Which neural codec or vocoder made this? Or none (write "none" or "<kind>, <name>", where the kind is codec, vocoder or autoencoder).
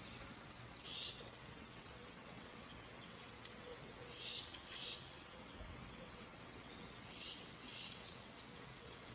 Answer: vocoder, WaveNeXt